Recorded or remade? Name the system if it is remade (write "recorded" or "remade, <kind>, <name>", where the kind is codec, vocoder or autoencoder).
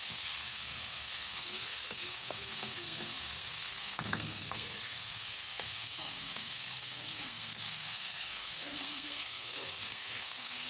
remade, codec, SNAC